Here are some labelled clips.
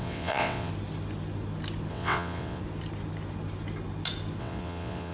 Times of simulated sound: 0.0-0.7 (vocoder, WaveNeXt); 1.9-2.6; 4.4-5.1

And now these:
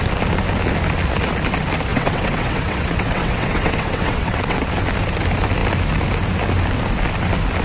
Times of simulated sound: 1.9-4.6 (vocoder, WaveNeXt)

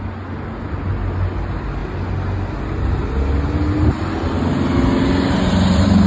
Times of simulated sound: none

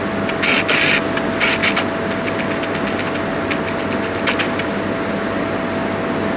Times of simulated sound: none

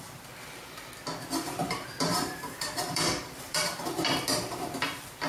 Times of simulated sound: 1.6-4.8 (vocoder, BigVGAN v2)